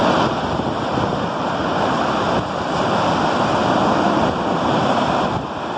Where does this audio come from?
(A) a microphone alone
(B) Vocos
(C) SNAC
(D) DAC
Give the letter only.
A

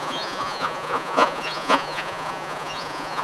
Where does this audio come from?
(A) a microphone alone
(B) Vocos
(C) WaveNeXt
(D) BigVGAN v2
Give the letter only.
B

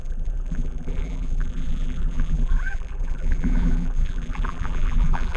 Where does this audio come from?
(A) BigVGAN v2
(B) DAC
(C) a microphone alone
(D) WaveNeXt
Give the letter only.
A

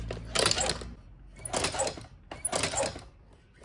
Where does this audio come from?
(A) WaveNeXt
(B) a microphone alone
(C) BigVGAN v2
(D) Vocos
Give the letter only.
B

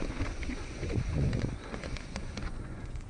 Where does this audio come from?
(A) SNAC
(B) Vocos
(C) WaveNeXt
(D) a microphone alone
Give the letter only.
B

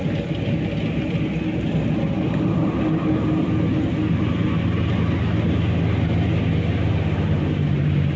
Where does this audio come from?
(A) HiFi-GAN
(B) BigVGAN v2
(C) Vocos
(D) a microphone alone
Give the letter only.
D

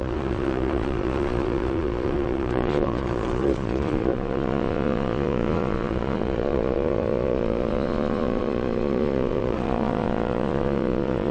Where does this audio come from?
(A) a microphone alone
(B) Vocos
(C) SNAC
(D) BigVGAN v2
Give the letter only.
B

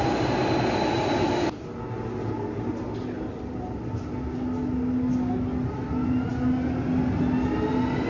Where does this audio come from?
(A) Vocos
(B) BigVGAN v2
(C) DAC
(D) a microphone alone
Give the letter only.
D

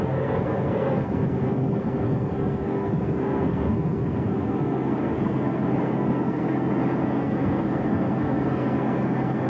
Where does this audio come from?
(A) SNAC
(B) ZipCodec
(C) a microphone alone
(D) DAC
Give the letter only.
A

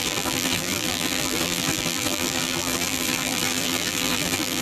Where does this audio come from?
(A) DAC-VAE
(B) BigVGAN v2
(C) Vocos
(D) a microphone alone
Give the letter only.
B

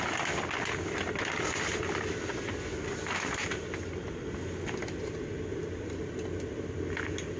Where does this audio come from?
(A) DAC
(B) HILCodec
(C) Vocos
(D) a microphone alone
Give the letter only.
D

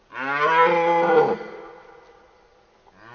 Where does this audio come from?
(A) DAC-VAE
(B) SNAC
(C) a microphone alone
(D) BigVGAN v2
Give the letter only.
C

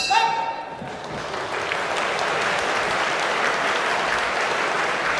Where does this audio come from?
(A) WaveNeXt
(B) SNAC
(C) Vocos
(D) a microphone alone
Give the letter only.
D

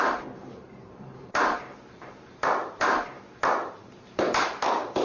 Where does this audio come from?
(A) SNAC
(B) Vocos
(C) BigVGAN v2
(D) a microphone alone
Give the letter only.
C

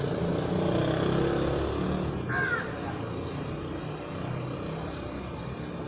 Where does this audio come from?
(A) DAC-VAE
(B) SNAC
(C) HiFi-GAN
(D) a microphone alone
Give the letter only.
D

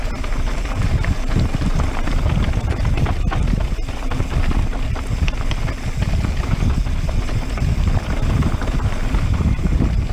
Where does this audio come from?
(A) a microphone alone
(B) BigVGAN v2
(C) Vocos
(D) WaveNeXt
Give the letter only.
A